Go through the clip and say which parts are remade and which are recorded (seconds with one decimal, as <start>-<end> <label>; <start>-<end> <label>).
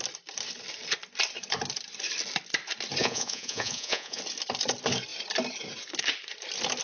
0.0-3.0 recorded; 3.0-4.2 remade; 4.2-6.8 recorded